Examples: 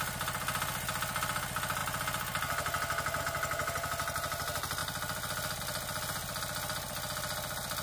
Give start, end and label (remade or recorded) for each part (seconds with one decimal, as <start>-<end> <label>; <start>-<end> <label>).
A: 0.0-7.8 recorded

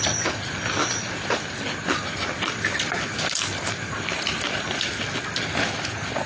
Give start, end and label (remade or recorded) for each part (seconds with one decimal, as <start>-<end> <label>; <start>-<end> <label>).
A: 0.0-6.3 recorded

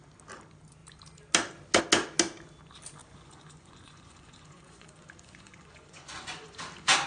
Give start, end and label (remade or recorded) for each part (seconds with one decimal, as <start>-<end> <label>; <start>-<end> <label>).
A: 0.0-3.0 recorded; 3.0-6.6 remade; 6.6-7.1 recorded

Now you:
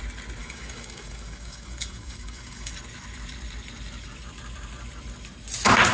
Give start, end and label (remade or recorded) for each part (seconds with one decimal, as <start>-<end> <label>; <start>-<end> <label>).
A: 0.0-0.4 recorded; 0.4-2.7 remade; 2.7-5.9 recorded

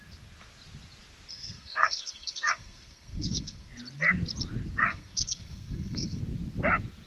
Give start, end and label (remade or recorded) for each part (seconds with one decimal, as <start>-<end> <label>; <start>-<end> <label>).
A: 0.0-1.3 recorded; 1.3-3.7 remade; 3.7-4.9 recorded; 4.9-6.2 remade; 6.2-7.1 recorded